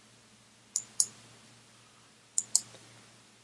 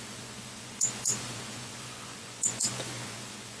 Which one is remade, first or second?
second